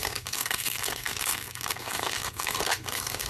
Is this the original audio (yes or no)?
no